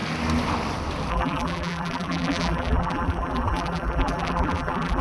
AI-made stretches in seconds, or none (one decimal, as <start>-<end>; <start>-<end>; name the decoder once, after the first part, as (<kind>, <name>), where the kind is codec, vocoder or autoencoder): 1.1-5.0 (vocoder, BigVGAN v2)